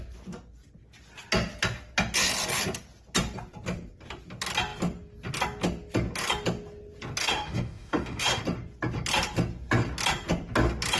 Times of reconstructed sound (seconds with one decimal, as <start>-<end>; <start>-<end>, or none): 7.2-8.4